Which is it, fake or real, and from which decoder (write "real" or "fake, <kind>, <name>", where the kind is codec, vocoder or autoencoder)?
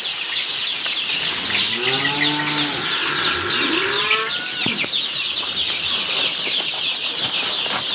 real